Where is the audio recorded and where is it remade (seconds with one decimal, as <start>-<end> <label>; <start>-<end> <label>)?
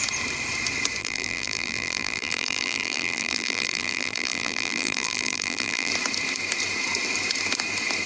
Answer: 0.0-1.0 recorded; 1.0-5.9 remade; 5.9-8.1 recorded